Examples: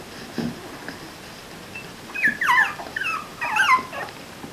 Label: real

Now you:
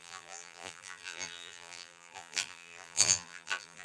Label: fake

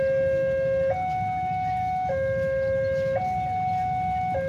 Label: real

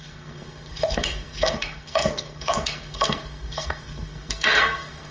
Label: fake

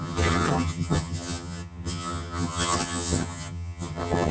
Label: fake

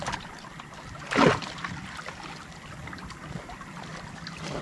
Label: real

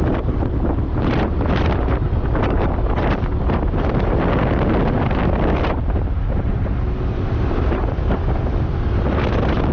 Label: real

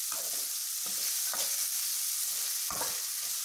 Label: real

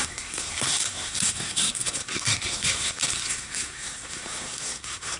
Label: fake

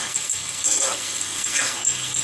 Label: fake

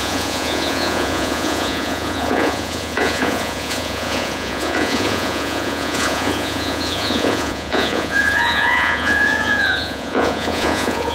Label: fake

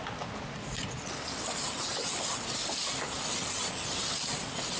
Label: real